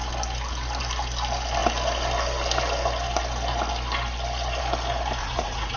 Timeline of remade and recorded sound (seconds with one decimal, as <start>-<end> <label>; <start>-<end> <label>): 0.0-5.2 recorded; 5.2-5.8 remade